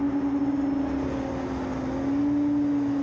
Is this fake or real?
real